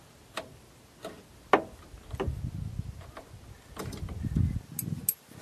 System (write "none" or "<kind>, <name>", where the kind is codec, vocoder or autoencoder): none